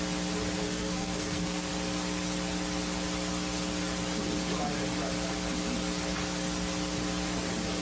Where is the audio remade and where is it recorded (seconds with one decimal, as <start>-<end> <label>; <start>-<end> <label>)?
0.0-0.6 recorded; 0.6-1.7 remade; 1.7-7.8 recorded